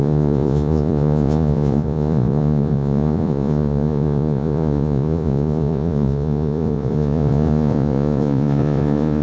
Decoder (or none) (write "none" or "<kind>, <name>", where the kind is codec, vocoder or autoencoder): vocoder, Vocos